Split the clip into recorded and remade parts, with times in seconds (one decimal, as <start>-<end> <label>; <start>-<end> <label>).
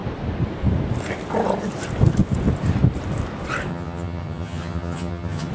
0.0-3.7 recorded; 3.7-5.5 remade